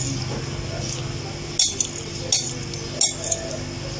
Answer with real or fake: real